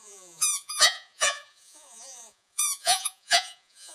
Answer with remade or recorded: remade